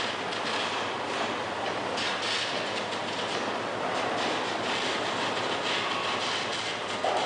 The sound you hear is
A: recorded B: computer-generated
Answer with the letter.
A